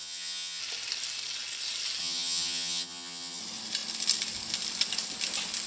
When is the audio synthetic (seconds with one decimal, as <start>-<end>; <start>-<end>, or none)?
0.0-0.6; 2.0-3.4